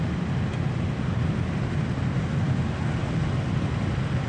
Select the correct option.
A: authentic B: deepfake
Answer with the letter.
A